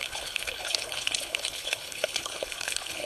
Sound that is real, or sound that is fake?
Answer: fake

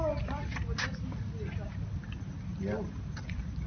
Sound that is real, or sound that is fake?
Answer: real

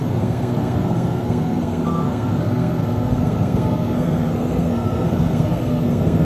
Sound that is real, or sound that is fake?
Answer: fake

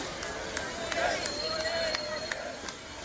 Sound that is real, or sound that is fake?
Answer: real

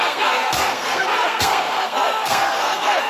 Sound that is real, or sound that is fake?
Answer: fake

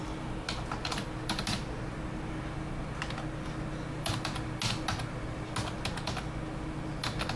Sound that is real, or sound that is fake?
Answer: real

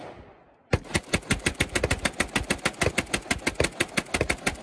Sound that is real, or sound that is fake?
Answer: real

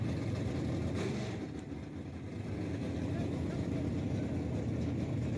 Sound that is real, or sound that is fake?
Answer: real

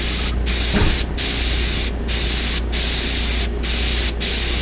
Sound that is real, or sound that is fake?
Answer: real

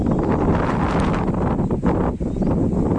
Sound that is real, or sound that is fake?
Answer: real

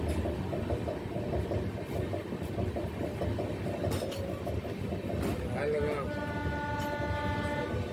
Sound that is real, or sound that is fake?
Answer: real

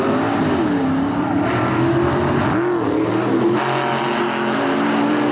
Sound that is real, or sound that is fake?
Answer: real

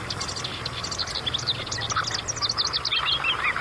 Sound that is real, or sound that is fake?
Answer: real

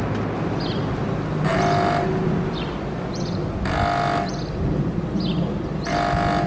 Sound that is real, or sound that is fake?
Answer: real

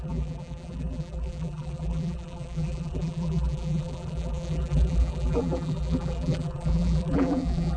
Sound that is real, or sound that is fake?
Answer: fake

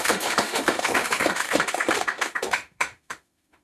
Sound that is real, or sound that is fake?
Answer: fake